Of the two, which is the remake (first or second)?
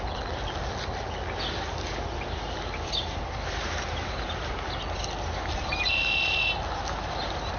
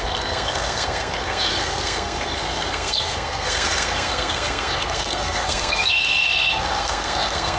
second